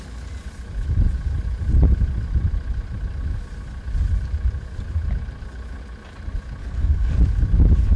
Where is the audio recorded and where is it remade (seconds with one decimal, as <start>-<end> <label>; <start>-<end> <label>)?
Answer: 0.0-6.6 recorded; 6.6-7.2 remade; 7.2-8.0 recorded